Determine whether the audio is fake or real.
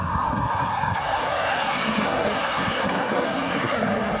fake